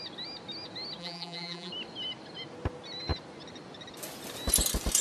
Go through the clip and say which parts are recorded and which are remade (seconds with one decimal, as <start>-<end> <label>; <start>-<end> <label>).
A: 0.0-1.0 recorded; 1.0-1.7 remade; 1.7-5.0 recorded